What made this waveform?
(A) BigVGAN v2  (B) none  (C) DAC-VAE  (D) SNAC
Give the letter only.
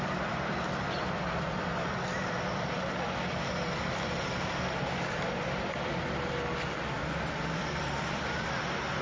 A